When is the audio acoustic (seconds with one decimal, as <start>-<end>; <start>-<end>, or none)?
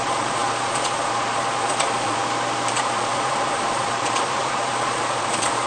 2.2-2.7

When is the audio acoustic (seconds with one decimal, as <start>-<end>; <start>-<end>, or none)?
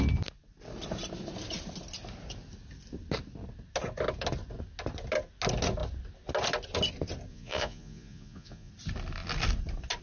0.0-7.3; 8.7-10.0